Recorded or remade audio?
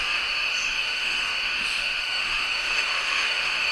remade